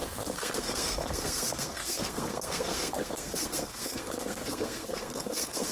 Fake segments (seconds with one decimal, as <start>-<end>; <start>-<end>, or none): 0.0-5.7